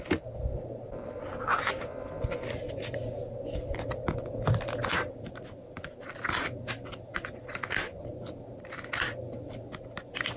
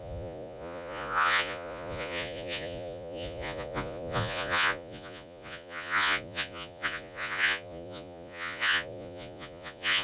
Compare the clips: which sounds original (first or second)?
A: first